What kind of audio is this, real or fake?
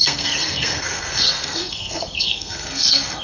fake